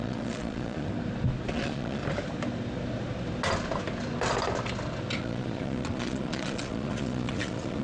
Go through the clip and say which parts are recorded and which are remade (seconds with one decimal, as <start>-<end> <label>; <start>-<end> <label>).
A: 0.0-0.9 remade; 0.9-1.5 recorded; 1.5-2.0 remade; 2.0-5.2 recorded; 5.2-7.8 remade